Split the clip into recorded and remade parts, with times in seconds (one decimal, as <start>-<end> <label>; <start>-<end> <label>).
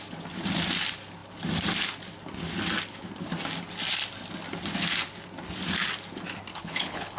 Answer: 0.0-6.5 recorded; 6.5-7.2 remade